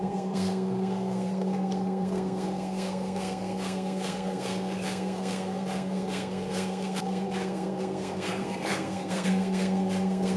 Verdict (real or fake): fake